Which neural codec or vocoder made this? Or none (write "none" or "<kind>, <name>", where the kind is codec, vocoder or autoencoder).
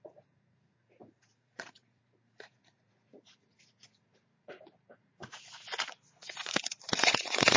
vocoder, Vocos